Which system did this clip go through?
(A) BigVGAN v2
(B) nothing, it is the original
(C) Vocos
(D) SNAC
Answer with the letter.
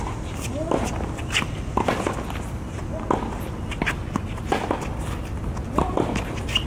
B